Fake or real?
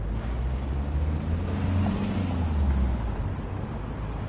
real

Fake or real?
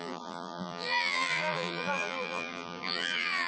fake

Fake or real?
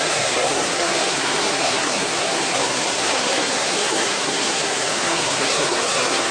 fake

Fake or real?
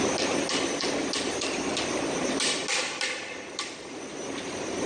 real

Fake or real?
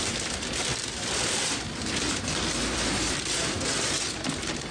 real